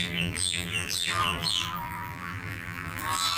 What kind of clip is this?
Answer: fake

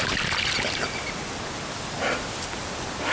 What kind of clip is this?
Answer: real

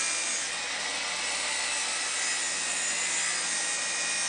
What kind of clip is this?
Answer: real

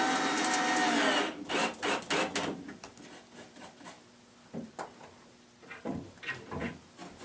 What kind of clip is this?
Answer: real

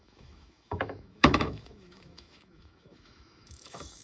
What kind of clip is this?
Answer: fake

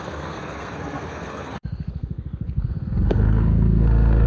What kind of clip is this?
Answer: fake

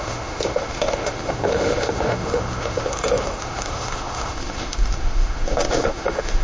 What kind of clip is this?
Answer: fake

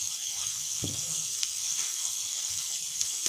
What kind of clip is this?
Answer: fake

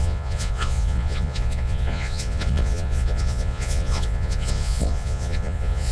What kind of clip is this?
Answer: fake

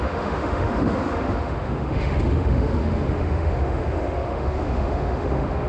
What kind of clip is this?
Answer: fake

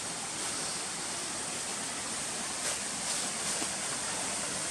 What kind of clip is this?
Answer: real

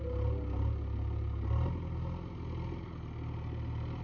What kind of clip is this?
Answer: real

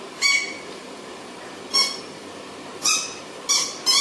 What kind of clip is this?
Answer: fake